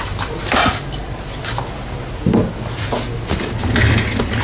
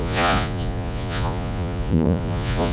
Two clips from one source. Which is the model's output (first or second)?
second